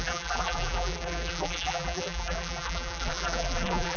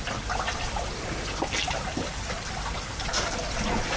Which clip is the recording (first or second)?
second